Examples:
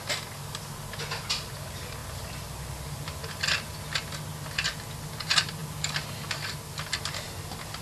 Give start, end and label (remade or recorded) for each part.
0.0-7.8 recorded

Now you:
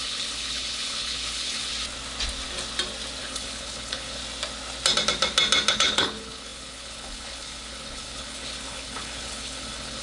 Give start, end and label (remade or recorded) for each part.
0.0-1.7 remade; 1.7-3.2 recorded; 3.2-4.2 remade; 4.2-5.7 recorded; 5.7-10.0 remade

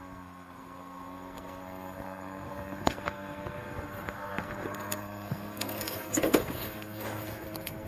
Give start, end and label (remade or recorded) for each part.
0.0-7.9 remade

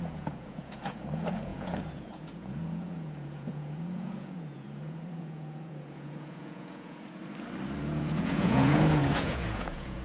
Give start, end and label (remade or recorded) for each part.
0.0-7.2 remade; 7.2-7.8 recorded; 7.8-10.0 remade

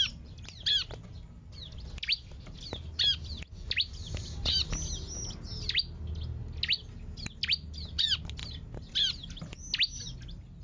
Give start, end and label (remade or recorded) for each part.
0.0-10.6 recorded

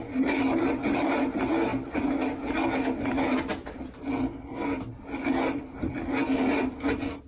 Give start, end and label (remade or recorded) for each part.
0.0-7.3 recorded